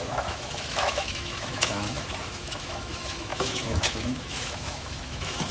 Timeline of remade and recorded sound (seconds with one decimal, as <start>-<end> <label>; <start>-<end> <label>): 0.0-5.5 remade